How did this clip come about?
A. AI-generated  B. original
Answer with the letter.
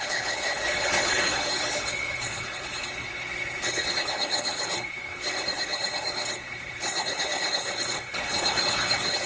A